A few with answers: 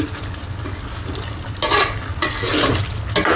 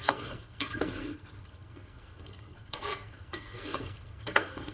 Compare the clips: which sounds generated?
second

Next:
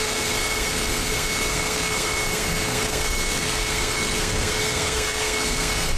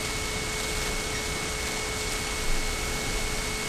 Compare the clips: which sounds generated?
first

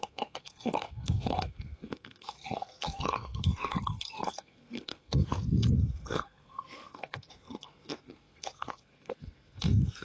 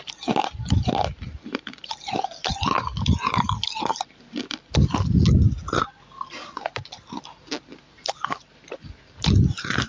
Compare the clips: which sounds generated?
first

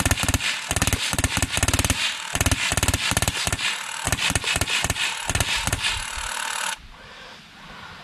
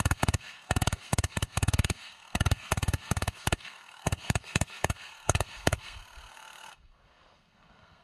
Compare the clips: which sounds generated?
second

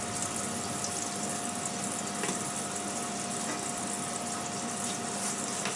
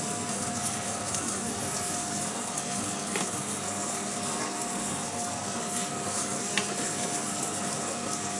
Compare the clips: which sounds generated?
second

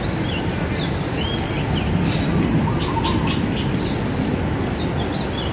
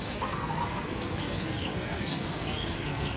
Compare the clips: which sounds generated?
second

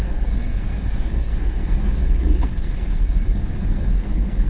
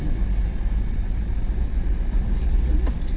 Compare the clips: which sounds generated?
first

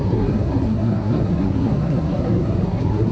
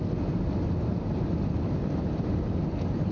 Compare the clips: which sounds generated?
first